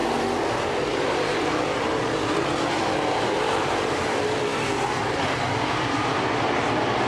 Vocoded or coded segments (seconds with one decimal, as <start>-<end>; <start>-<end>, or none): 1.0-6.1